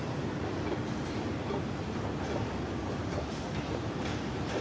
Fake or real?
fake